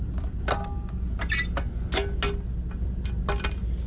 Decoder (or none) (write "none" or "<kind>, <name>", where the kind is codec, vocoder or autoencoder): none